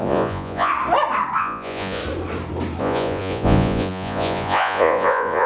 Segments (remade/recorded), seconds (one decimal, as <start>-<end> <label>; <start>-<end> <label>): 0.0-0.7 remade; 0.7-1.4 recorded; 1.4-2.0 remade; 2.0-2.8 recorded; 2.8-5.5 remade

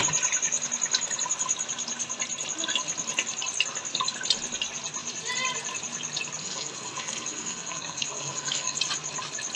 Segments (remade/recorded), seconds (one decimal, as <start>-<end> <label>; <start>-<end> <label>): 0.0-6.4 recorded; 6.4-8.8 remade; 8.8-9.6 recorded

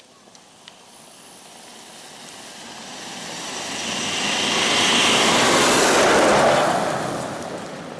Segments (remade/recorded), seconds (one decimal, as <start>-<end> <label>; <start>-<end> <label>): 0.0-8.0 recorded

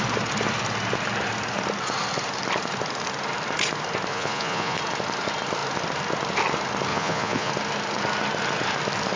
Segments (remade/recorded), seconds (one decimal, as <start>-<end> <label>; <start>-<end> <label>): 0.0-4.1 recorded; 4.1-4.8 remade; 4.8-6.9 recorded; 6.9-7.5 remade; 7.5-9.2 recorded

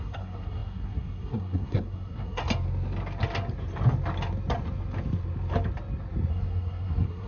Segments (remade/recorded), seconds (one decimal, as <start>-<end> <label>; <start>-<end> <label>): 0.0-2.4 remade; 2.4-6.3 recorded; 6.3-7.3 remade

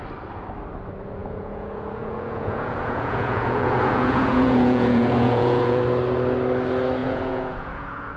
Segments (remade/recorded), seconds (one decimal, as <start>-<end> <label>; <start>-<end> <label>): 0.0-1.2 recorded; 1.2-5.8 remade; 5.8-7.0 recorded; 7.0-8.2 remade

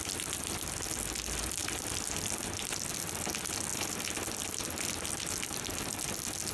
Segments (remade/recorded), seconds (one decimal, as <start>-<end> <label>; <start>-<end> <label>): 0.0-6.5 recorded

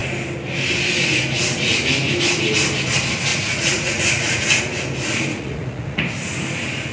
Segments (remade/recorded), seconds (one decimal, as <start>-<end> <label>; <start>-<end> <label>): 0.0-3.3 recorded; 3.3-4.6 remade; 4.6-5.3 recorded; 5.3-6.0 remade; 6.0-6.9 recorded